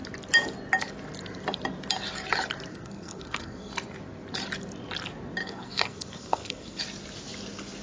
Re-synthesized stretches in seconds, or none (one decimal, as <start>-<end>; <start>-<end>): 2.7-3.7; 5.4-6.8